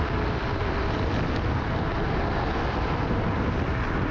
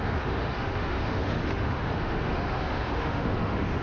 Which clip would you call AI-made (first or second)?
second